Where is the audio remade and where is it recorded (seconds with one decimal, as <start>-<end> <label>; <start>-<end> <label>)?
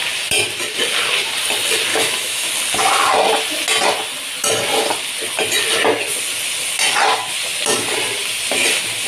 0.0-1.9 recorded; 1.9-2.5 remade; 2.5-9.1 recorded